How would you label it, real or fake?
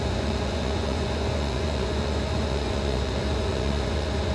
fake